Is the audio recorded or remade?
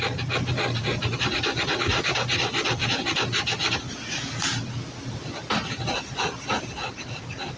recorded